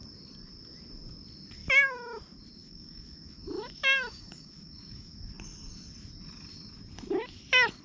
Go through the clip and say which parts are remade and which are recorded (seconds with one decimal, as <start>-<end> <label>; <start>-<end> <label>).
0.0-1.6 recorded; 1.6-2.2 remade; 2.2-2.6 recorded; 2.6-5.3 remade; 5.3-7.8 recorded